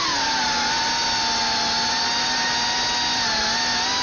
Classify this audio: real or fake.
real